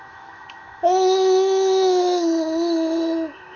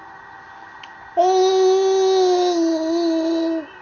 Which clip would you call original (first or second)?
second